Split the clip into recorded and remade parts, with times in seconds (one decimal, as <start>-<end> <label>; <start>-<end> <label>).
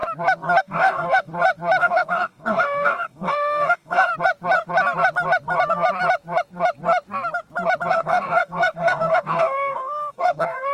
0.0-0.6 recorded; 0.6-1.3 remade; 1.3-1.8 recorded; 1.8-4.1 remade; 4.1-7.9 recorded; 7.9-10.7 remade